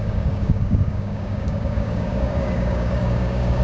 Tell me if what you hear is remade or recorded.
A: remade